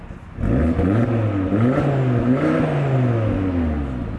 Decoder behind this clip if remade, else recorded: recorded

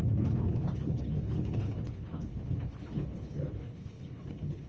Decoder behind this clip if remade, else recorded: remade, codec, HILCodec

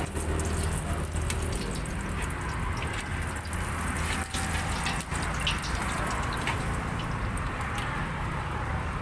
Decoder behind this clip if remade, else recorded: recorded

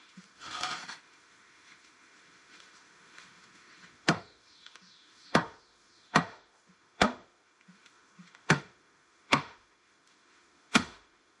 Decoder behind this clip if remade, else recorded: remade, autoencoder, DAC-VAE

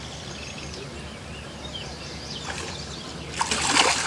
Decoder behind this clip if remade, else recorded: recorded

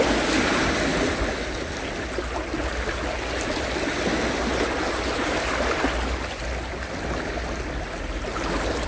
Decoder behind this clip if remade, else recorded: recorded